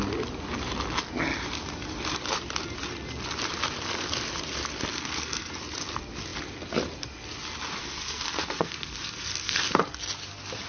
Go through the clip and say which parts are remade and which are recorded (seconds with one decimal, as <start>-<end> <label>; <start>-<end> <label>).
0.0-4.9 recorded; 4.9-5.5 remade; 5.5-7.8 recorded; 7.8-9.8 remade; 9.8-10.7 recorded